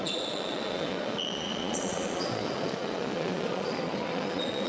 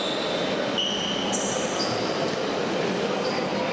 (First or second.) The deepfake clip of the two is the first